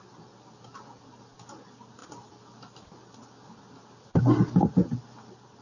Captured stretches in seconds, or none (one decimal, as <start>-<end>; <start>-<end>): 0.0-5.6